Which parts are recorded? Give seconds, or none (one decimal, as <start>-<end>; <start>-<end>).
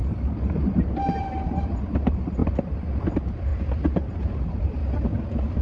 4.8-5.6